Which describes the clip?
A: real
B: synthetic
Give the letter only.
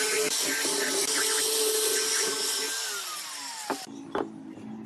A